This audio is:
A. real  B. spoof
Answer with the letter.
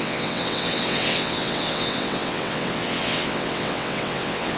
B